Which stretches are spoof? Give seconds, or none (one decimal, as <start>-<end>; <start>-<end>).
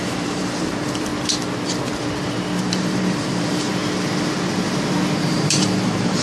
0.0-1.1; 2.6-3.7; 5.3-6.2